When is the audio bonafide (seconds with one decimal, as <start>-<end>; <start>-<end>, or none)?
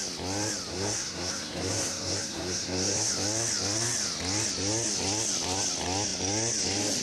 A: 0.0-0.7; 3.1-7.0